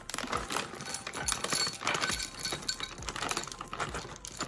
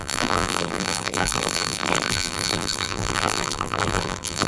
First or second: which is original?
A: first